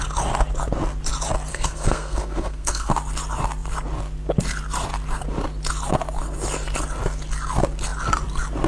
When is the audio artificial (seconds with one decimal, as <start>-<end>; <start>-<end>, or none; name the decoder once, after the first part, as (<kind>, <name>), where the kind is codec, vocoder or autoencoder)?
1.5-2.9 (codec, SNAC)